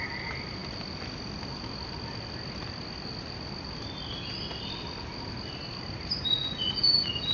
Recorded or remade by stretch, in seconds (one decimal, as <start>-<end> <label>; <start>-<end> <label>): 0.0-6.3 recorded; 6.3-7.3 remade